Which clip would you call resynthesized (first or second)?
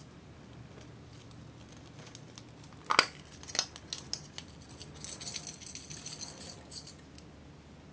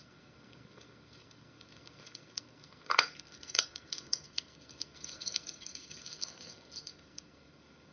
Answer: second